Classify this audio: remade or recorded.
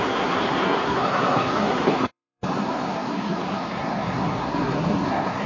remade